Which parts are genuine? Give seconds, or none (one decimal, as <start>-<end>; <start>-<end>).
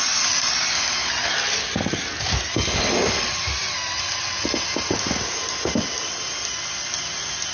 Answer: 0.0-7.5